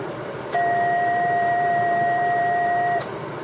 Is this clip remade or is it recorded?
remade